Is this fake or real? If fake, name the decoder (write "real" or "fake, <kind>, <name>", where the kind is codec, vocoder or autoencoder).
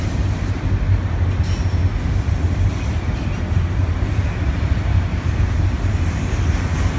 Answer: real